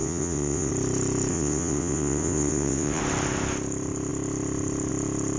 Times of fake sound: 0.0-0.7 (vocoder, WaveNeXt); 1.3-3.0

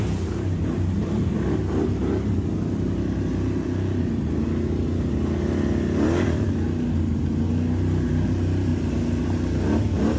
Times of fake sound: none

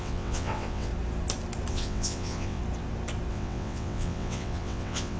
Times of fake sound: 0.0-0.9 (vocoder, WaveNeXt); 1.7-2.6; 3.3-5.2